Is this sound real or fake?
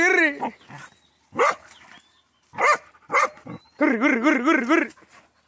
real